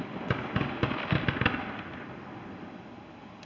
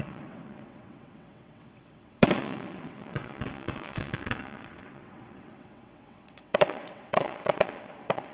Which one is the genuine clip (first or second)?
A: first